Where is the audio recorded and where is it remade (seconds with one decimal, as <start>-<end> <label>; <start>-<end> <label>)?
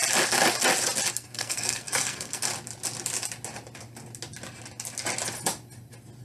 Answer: 0.0-1.1 recorded; 1.1-2.5 remade; 2.5-6.2 recorded